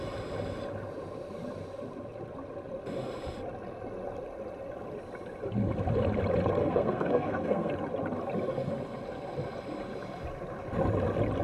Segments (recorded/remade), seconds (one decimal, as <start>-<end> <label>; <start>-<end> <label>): 0.0-6.6 recorded; 6.6-7.7 remade; 7.7-11.4 recorded